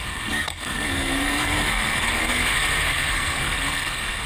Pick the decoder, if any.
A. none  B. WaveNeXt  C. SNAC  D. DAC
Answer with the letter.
C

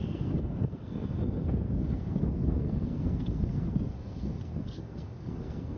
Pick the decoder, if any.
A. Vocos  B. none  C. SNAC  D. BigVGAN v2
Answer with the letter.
C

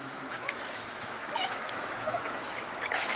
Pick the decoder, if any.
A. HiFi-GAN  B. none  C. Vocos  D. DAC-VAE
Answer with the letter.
D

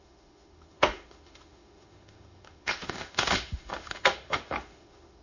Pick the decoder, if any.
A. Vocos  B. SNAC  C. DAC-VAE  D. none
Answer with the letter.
C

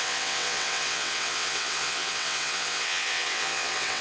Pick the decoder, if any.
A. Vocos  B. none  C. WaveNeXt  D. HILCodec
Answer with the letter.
C